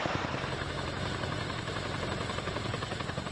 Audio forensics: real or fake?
fake